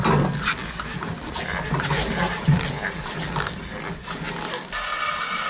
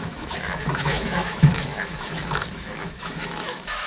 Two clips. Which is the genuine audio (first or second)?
first